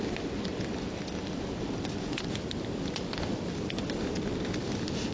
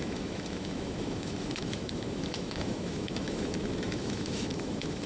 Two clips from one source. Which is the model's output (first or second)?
second